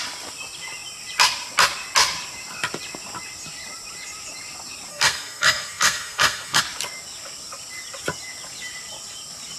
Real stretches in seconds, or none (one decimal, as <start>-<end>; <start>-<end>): 0.0-4.9; 6.6-9.6